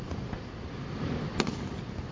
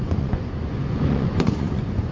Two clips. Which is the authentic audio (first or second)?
first